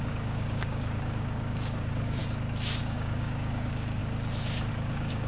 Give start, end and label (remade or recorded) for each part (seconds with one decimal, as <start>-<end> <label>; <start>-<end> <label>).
0.0-2.2 remade; 2.2-2.8 recorded; 2.8-4.0 remade; 4.0-4.7 recorded; 4.7-5.3 remade

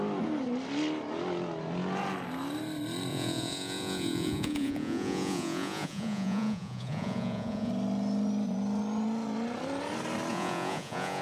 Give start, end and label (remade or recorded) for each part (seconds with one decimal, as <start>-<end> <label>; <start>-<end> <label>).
0.0-3.1 recorded; 3.1-7.7 remade; 7.7-10.3 recorded; 10.3-11.2 remade

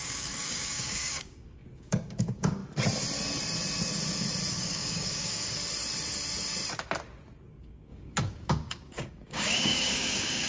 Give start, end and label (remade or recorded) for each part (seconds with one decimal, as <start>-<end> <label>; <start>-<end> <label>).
0.0-2.6 remade; 2.6-4.5 recorded; 4.5-5.6 remade; 5.6-7.5 recorded; 7.5-10.5 remade

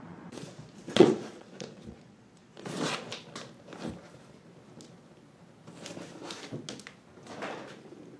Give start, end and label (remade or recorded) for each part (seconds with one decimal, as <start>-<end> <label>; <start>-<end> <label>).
0.0-3.1 remade; 3.1-8.2 recorded

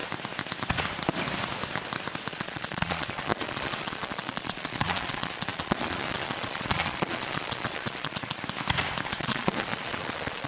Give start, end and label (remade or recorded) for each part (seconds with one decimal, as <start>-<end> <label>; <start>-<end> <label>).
0.0-2.3 recorded; 2.3-8.4 remade; 8.4-9.1 recorded; 9.1-10.5 remade

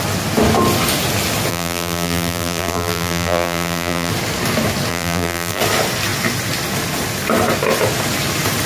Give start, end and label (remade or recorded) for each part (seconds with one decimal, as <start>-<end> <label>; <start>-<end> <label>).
0.0-1.5 recorded; 1.5-4.1 remade; 4.1-4.9 recorded; 4.9-5.6 remade; 5.6-8.7 recorded